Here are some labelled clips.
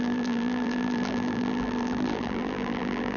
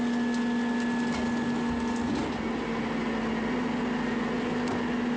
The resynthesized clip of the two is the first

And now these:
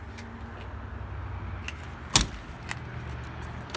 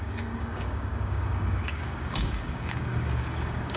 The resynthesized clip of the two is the second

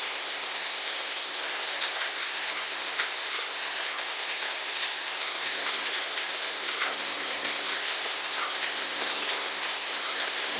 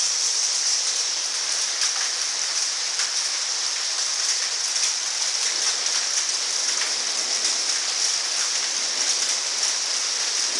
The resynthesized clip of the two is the first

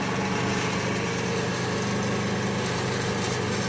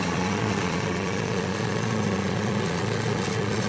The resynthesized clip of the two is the second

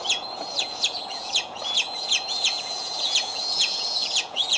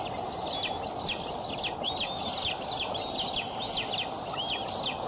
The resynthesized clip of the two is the first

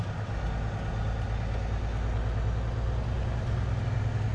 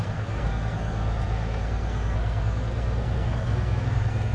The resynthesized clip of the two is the second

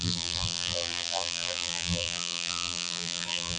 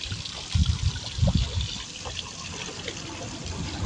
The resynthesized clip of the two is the first